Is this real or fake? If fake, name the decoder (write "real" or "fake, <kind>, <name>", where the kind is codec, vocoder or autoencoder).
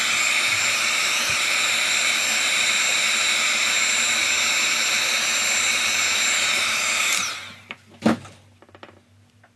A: real